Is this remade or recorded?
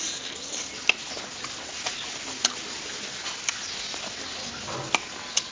recorded